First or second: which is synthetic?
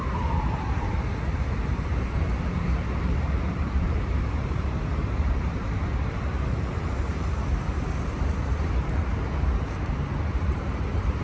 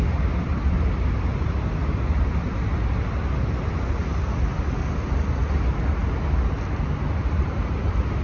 first